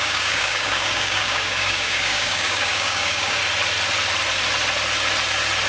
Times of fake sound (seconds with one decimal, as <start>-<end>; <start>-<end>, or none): 0.0-3.4